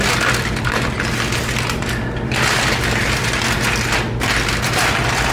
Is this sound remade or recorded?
recorded